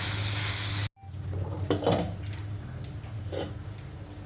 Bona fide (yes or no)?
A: yes